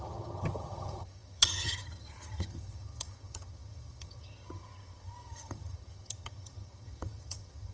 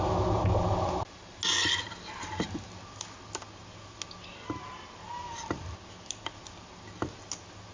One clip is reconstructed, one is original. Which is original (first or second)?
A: second